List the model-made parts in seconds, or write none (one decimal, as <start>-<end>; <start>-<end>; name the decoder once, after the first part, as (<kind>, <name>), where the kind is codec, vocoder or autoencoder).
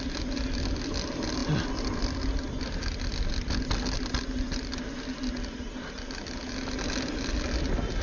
none